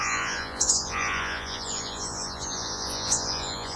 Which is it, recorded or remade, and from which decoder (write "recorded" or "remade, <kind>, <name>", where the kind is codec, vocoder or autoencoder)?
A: remade, vocoder, Vocos